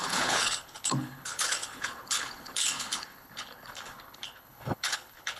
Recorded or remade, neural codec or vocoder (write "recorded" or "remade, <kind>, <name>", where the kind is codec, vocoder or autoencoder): remade, codec, HILCodec